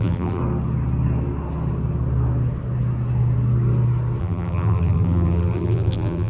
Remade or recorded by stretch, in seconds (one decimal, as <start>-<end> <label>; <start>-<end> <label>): 0.0-0.4 remade; 0.4-4.2 recorded; 4.2-6.3 remade